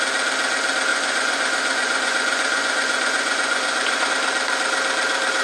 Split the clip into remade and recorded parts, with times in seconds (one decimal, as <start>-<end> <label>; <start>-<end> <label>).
0.0-0.9 recorded; 0.9-4.1 remade; 4.1-5.4 recorded